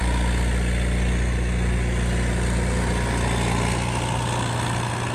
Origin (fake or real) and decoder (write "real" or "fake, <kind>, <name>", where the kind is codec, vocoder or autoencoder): real